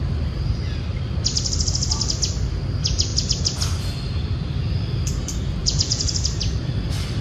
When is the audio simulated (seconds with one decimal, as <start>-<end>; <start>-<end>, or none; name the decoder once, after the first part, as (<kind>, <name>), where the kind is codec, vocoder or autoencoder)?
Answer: 5.6-6.1 (vocoder, Vocos)